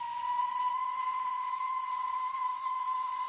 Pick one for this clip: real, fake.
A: fake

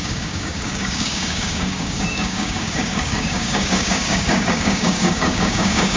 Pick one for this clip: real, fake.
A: fake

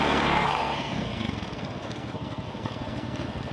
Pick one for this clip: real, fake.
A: fake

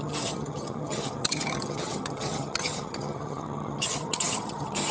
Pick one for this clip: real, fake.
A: fake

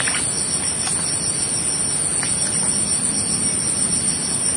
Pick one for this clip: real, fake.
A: real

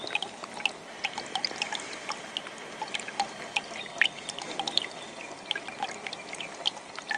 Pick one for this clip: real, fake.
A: real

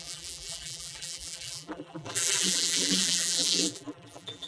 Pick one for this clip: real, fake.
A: fake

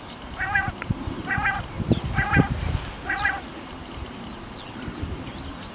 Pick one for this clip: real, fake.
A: real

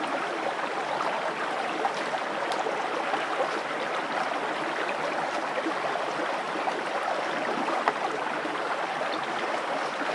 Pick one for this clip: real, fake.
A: real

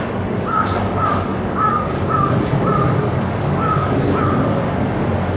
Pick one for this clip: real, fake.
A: fake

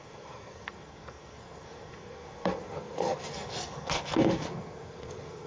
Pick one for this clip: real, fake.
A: fake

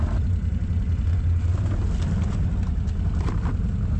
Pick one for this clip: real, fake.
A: real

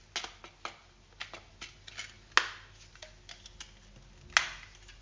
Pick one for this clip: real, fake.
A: real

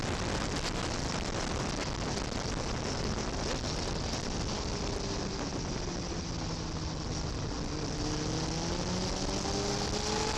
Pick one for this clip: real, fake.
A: real